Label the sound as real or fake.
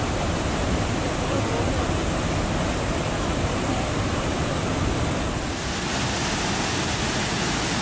real